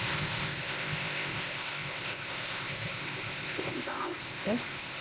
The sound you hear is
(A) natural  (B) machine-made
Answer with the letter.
B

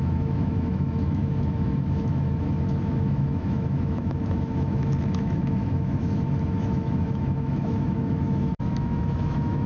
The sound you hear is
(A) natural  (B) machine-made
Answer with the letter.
B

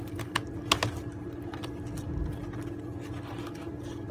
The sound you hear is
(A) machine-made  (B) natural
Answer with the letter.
B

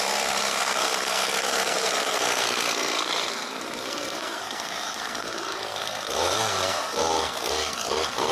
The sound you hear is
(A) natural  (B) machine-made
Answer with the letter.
B